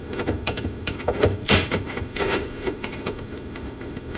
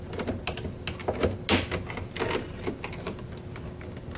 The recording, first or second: second